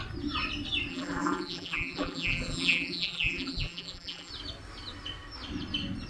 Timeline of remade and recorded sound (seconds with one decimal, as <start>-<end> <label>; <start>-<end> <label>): 0.0-0.9 recorded; 0.9-4.3 remade; 4.3-6.1 recorded